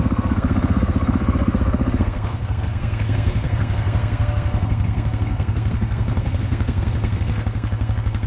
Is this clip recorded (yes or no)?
no